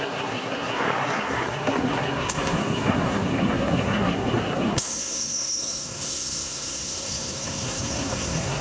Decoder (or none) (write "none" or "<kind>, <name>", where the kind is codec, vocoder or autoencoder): codec, SNAC